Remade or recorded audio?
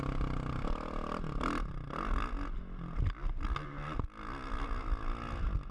recorded